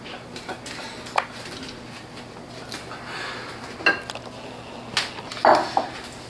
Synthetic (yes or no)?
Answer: no